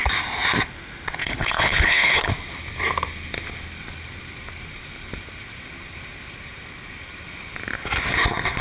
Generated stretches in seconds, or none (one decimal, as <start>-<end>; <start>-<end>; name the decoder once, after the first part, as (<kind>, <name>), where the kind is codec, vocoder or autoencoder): 1.2-2.3 (codec, HILCodec)

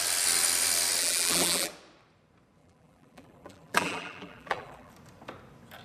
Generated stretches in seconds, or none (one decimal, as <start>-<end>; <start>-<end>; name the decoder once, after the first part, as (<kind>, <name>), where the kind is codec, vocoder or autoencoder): 1.0-1.7 (vocoder, BigVGAN v2); 2.6-4.9

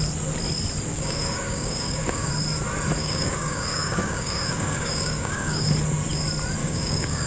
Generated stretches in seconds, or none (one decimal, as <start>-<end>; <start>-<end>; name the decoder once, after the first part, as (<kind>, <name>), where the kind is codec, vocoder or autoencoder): 0.9-2.3 (codec, DAC); 3.0-5.7; 6.6-7.3

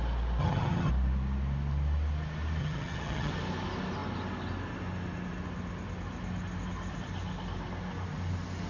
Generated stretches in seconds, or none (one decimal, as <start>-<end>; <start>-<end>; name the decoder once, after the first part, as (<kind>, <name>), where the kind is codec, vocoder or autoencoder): 0.4-0.9 (vocoder, HiFi-GAN); 2.6-3.3